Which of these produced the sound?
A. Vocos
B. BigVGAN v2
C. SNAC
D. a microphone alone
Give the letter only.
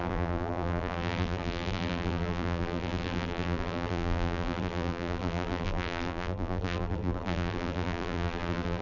B